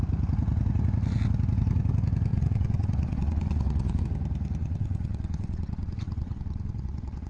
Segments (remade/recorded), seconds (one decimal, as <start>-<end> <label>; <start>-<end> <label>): 0.0-2.3 recorded; 2.3-4.0 remade; 4.0-4.6 recorded; 4.6-7.3 remade